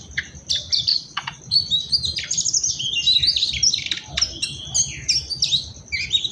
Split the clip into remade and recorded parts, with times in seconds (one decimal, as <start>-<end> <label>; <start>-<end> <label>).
0.0-0.9 recorded; 0.9-1.4 remade; 1.4-6.3 recorded